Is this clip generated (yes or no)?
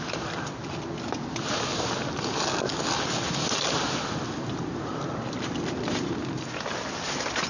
no